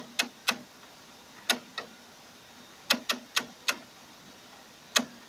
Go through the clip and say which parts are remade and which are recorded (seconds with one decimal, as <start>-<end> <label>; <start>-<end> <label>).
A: 0.0-5.3 recorded